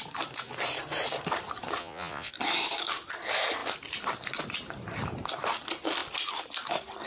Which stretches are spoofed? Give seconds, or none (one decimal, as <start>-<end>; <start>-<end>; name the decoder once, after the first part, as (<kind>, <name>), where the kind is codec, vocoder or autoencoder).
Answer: 1.8-2.3 (vocoder, Vocos)

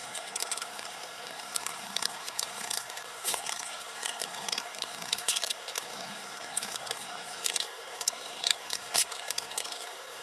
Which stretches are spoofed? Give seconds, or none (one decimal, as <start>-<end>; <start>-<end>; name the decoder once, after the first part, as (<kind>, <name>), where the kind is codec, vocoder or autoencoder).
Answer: 0.0-10.2 (codec, SNAC)